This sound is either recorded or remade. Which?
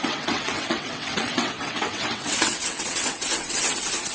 remade